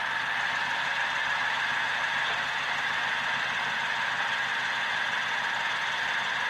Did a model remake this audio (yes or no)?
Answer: no